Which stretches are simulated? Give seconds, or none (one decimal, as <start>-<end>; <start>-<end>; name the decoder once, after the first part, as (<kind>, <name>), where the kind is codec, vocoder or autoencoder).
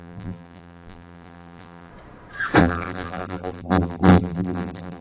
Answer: 0.0-1.9 (vocoder, BigVGAN v2); 2.6-5.0